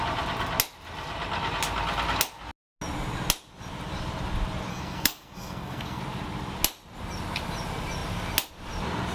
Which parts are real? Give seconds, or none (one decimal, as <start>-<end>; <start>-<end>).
0.0-4.7; 6.0-9.1